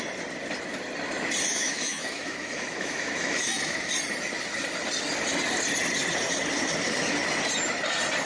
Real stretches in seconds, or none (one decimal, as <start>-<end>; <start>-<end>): 0.0-1.5; 3.9-8.3